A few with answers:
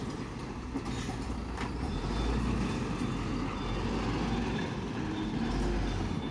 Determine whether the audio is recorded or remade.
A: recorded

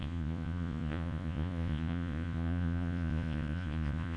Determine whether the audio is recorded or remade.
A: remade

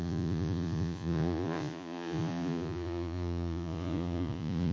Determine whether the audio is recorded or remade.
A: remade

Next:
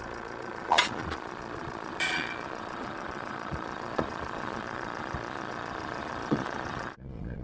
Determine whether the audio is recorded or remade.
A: remade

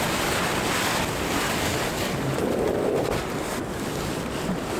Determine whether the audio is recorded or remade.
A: recorded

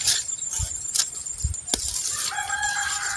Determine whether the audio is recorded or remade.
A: recorded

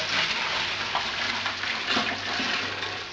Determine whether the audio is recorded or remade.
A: recorded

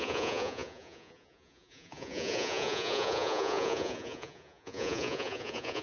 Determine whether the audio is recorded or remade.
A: remade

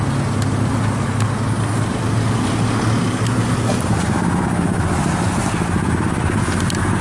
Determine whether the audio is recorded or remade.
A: recorded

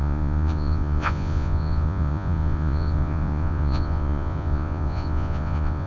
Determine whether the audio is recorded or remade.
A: remade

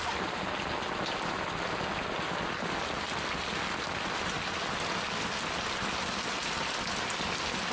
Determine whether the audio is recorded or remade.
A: recorded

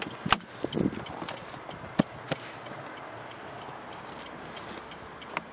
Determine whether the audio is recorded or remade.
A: recorded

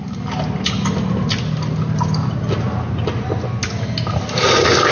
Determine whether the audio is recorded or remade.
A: recorded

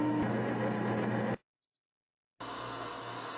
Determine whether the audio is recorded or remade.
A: recorded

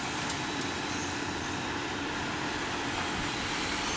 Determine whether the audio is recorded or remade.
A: recorded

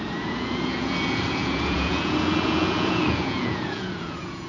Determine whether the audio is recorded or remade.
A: remade